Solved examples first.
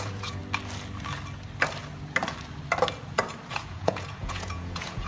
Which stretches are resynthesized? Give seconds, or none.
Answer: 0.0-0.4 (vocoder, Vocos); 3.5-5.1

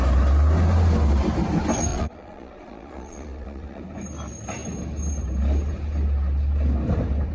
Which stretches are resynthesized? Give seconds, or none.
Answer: 1.9-3.8 (vocoder, Vocos)

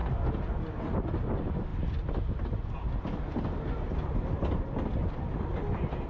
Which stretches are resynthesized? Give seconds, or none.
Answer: none

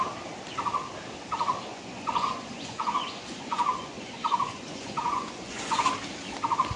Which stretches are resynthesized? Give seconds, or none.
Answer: 1.7-5.8 (vocoder, Vocos)

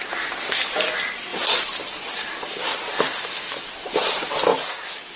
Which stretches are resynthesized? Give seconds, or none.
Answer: none

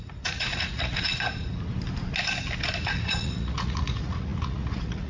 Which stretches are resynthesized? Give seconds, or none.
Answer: 0.0-1.1 (vocoder, Vocos); 2.8-5.1

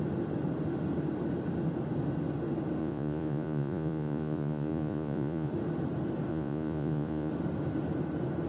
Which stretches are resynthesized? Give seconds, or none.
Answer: 2.8-5.5 (vocoder, Vocos); 6.3-7.3

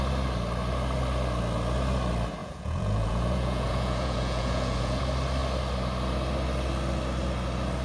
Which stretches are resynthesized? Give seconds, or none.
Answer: 2.4-5.0 (vocoder, Vocos)